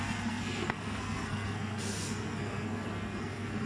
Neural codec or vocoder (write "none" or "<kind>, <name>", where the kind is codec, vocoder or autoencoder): codec, SNAC